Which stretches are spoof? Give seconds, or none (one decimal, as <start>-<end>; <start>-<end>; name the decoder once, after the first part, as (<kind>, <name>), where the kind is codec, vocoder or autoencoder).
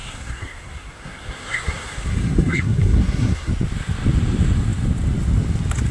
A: 0.0-3.5 (codec, SNAC)